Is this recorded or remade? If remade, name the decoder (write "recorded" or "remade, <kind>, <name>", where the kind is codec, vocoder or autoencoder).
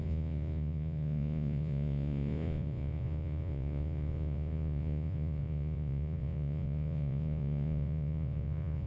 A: remade, vocoder, Vocos